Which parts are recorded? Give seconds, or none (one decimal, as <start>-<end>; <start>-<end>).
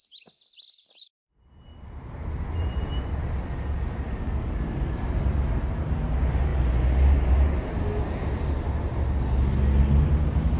0.0-10.6